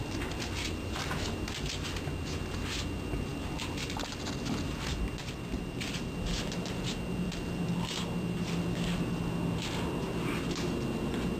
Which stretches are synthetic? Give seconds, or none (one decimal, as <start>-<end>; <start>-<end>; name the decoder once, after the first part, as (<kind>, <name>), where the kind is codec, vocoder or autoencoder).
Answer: none